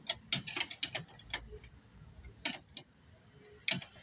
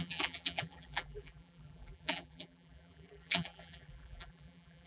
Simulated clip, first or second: second